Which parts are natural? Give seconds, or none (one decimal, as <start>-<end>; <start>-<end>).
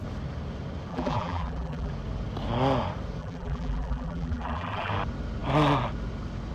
0.0-0.9; 1.9-3.2; 4.9-6.5